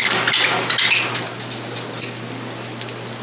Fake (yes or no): no